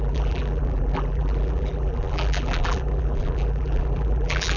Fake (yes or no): yes